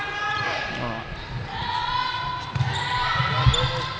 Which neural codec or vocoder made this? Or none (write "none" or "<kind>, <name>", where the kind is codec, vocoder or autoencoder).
none